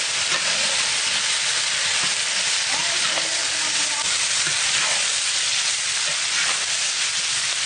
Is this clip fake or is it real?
real